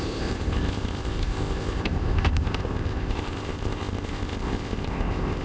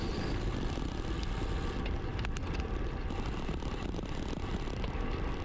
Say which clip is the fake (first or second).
first